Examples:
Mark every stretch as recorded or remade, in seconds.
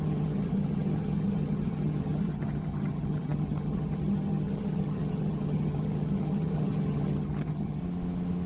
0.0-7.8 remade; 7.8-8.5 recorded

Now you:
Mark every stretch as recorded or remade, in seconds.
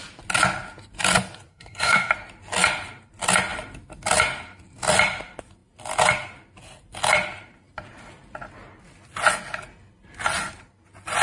0.0-1.5 recorded; 1.5-2.1 remade; 2.1-11.2 recorded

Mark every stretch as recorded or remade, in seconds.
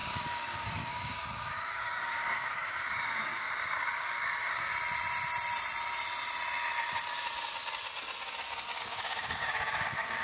0.0-4.7 remade; 4.7-8.8 recorded; 8.8-10.2 remade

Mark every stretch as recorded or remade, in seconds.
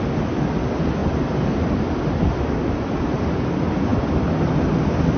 0.0-5.2 recorded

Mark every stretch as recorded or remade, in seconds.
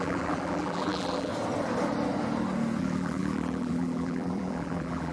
0.0-1.3 remade; 1.3-2.8 recorded; 2.8-5.1 remade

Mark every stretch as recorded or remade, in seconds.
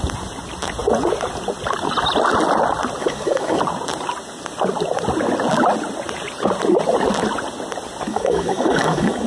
0.0-3.0 recorded; 3.0-3.6 remade; 3.6-8.1 recorded; 8.1-9.3 remade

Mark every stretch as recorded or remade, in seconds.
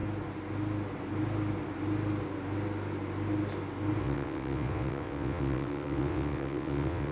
0.0-4.0 recorded; 4.0-7.1 remade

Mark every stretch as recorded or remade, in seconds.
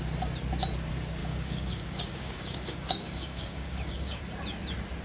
0.0-1.2 recorded; 1.2-4.2 remade; 4.2-5.0 recorded